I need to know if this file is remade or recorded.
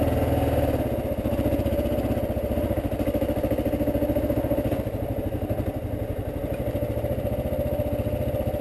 recorded